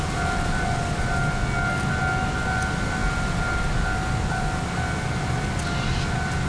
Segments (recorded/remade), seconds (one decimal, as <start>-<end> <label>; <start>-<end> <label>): 0.0-6.5 recorded